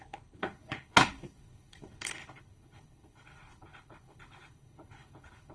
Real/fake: fake